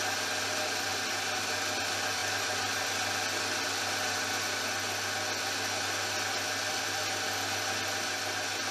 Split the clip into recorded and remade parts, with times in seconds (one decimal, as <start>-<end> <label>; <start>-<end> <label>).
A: 0.0-8.7 recorded